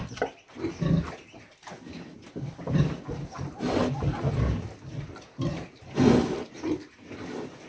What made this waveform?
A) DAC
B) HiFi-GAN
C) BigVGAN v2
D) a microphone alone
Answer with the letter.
D